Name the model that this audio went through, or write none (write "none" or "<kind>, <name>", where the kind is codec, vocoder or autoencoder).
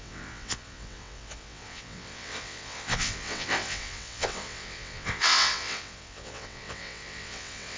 vocoder, WaveNeXt